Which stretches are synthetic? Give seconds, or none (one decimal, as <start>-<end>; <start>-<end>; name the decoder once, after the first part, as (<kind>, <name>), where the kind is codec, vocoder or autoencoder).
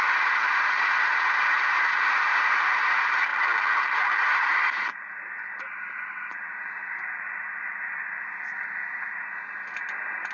none